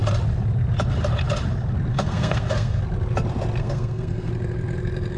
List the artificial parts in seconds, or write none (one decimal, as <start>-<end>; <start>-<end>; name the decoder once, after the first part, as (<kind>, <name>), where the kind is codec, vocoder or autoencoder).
1.9-2.8 (codec, SNAC); 3.6-4.3